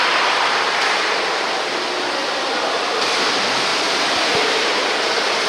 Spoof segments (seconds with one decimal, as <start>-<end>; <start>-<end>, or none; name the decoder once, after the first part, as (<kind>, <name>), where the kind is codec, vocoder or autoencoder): 3.7-4.7 (vocoder, BigVGAN v2)

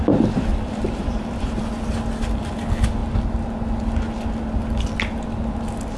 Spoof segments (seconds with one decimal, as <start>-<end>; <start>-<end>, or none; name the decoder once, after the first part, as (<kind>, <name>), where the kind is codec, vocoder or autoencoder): 0.5-1.6 (vocoder, BigVGAN v2)

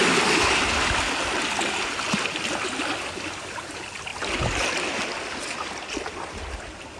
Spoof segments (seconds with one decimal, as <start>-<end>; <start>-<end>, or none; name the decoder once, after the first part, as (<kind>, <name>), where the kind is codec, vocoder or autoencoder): none

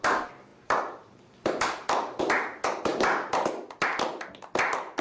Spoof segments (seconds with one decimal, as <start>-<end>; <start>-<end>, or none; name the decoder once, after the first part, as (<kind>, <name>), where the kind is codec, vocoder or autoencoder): 0.5-2.2 (vocoder, BigVGAN v2)

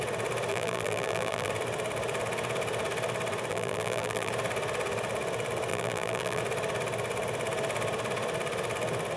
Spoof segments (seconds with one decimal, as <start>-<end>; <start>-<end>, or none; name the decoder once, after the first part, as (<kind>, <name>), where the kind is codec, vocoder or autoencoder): 0.5-1.5 (vocoder, BigVGAN v2); 3.5-4.3; 5.7-6.4

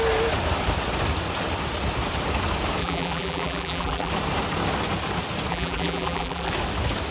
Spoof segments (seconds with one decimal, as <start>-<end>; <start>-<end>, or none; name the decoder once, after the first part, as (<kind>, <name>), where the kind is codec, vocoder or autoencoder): 2.8-4.1 (vocoder, BigVGAN v2); 5.5-6.5

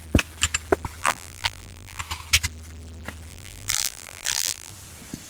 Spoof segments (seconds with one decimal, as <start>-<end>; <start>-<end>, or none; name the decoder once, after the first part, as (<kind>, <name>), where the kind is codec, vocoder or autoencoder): 1.0-2.0 (vocoder, BigVGAN v2); 3.3-4.7